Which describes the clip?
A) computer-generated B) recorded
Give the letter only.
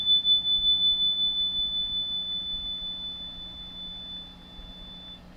B